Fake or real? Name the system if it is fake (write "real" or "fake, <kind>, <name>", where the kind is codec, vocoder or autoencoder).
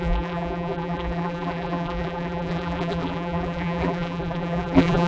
fake, vocoder, BigVGAN v2